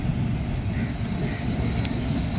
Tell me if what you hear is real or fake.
real